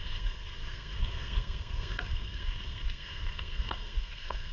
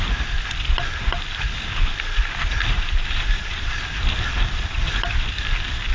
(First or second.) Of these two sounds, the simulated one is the first